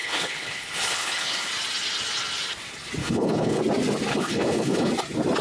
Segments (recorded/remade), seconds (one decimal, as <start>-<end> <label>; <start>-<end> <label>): 0.0-1.5 remade; 1.5-3.0 recorded; 3.0-3.6 remade; 3.6-4.1 recorded; 4.1-4.9 remade; 4.9-5.4 recorded